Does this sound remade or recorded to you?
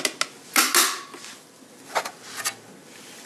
recorded